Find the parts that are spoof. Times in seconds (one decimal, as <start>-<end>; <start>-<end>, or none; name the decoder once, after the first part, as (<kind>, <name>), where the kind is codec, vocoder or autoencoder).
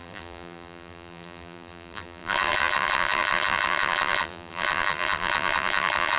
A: 0.0-6.2 (vocoder, BigVGAN v2)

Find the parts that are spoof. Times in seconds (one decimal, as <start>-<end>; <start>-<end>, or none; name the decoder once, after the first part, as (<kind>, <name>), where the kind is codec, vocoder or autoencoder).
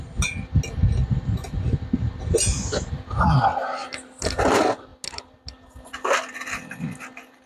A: none